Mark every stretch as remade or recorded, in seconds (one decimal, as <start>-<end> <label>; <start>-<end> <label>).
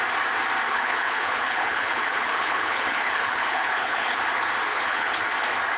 0.0-0.7 recorded; 0.7-4.2 remade; 4.2-4.7 recorded; 4.7-5.2 remade; 5.2-5.8 recorded